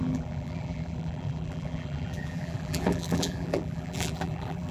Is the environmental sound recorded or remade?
remade